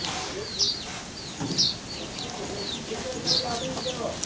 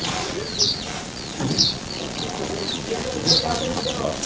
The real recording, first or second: first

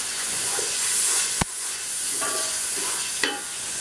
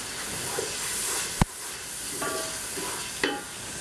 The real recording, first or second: second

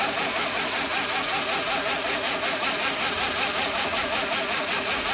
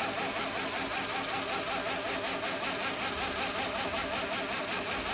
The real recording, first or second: second